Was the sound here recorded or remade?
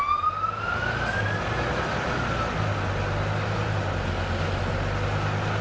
recorded